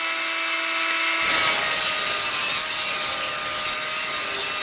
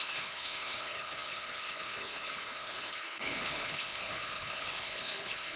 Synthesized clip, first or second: second